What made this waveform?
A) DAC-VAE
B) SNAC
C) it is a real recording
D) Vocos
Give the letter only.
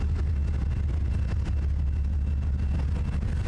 C